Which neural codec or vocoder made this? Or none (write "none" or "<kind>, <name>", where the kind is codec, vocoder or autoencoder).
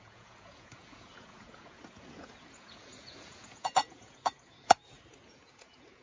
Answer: vocoder, Vocos